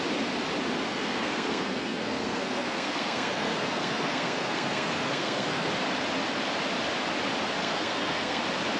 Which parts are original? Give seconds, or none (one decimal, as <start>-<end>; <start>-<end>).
0.0-0.9; 5.7-7.6; 8.4-8.8